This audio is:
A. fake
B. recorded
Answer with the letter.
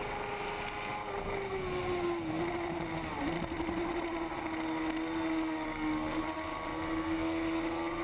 B